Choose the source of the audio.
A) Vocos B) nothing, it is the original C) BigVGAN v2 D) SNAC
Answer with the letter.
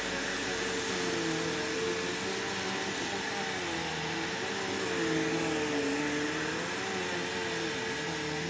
B